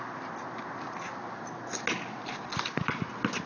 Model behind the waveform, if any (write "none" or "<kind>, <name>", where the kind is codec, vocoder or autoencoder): none